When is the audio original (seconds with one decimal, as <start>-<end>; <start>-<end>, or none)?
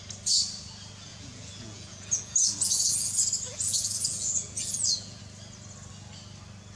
0.0-1.1; 5.2-6.8